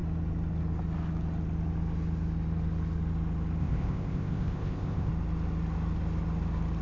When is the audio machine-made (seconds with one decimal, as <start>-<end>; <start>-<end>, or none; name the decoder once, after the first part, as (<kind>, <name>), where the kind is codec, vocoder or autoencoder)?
3.6-5.1 (codec, ZipCodec)